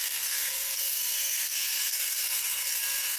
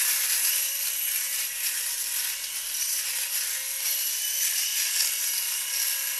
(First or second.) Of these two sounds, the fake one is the first